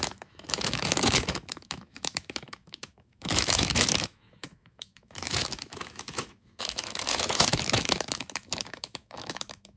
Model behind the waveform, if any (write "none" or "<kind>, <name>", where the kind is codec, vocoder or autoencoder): autoencoder, DAC-VAE